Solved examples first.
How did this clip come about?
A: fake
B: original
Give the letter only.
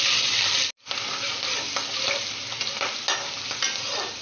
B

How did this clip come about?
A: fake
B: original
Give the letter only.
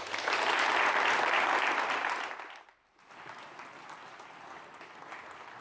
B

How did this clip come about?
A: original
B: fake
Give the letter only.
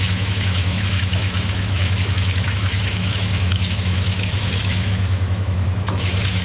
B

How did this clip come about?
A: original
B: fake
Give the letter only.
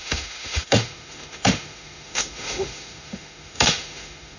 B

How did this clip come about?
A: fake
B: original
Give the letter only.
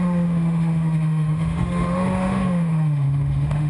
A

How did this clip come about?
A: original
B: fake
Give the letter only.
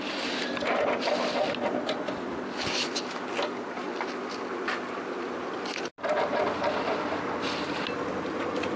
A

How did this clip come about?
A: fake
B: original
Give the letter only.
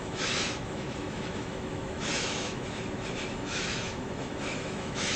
A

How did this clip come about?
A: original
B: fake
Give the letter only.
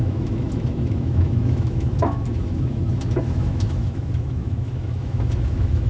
B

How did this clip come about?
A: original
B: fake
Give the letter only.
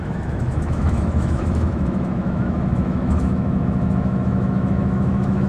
B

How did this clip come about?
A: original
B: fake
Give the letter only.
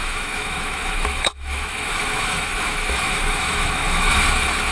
B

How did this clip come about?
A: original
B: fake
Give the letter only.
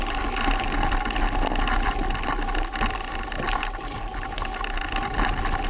A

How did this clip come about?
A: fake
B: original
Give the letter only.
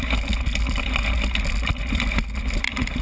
B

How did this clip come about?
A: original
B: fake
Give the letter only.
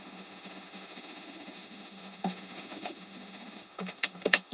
B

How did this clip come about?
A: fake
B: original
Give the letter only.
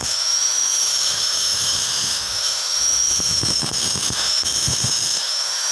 A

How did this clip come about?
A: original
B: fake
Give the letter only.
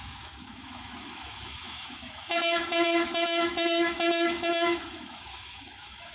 B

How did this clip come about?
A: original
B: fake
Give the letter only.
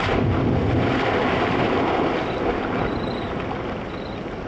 A